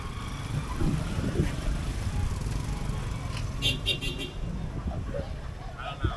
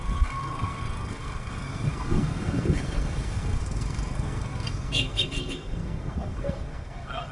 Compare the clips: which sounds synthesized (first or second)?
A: second